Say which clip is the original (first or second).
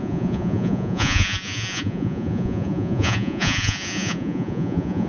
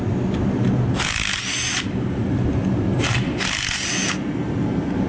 second